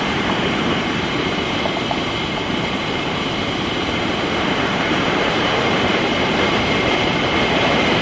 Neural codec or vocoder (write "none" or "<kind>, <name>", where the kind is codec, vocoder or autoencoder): vocoder, BigVGAN v2